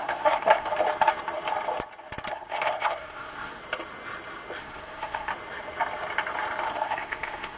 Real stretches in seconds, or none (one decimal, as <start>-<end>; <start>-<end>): 0.7-2.3; 3.6-4.6; 5.3-6.7